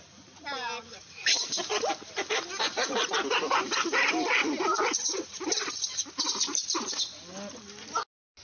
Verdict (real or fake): real